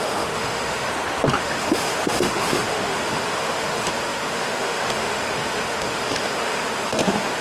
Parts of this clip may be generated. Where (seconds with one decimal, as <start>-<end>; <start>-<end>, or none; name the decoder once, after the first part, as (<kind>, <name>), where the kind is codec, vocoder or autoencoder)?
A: 0.0-0.9 (autoencoder, DAC-VAE); 1.4-7.4